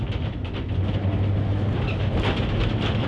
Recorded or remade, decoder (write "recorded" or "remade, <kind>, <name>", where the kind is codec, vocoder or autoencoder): recorded